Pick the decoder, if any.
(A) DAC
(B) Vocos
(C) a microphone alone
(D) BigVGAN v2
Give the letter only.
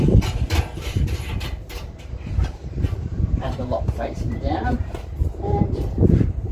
D